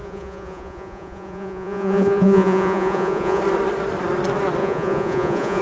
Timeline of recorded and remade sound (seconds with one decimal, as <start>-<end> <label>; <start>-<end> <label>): 0.0-3.4 remade; 3.4-4.6 recorded; 4.6-5.6 remade